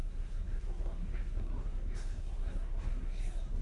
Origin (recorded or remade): remade